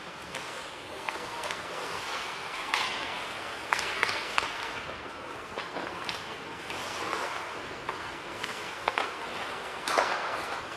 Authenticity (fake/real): fake